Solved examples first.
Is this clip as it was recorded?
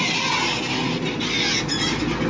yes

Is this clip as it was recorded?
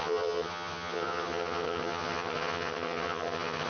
no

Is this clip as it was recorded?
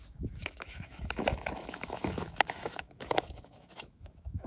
no